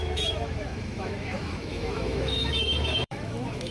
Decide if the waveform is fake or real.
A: fake